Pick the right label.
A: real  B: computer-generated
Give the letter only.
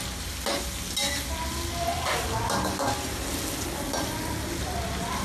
A